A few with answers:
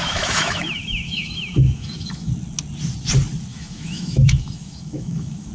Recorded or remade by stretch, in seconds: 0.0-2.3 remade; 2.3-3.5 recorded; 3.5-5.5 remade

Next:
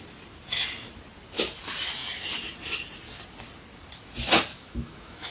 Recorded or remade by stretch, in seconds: 0.0-4.5 recorded; 4.5-5.3 remade

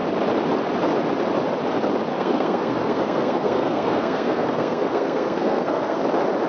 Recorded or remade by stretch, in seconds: 0.0-2.1 recorded; 2.1-6.0 remade; 6.0-6.5 recorded